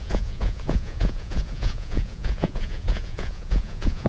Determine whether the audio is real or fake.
fake